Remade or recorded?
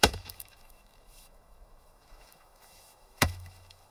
remade